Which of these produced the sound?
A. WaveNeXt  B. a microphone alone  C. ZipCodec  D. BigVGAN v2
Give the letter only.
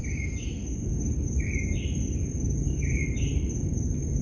D